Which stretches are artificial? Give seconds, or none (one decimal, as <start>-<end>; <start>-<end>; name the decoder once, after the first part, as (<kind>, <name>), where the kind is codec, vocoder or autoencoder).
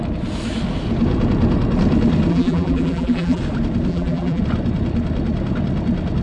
2.3-3.4 (vocoder, BigVGAN v2); 3.9-4.4